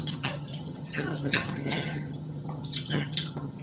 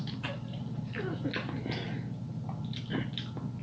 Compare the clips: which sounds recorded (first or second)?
second